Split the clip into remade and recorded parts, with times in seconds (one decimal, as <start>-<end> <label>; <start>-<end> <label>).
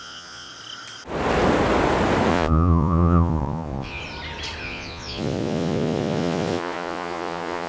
0.0-0.5 remade; 0.5-2.3 recorded; 2.3-4.0 remade; 4.0-4.6 recorded; 4.6-7.7 remade